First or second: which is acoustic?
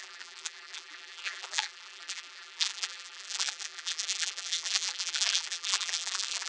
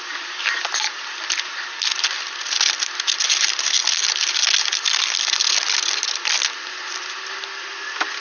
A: second